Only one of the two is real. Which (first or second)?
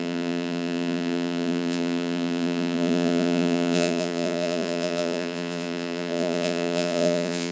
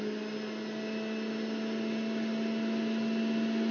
second